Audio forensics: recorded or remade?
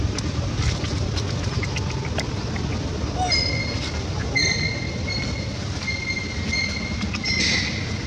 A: recorded